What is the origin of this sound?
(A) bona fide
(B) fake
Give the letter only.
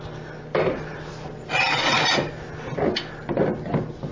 A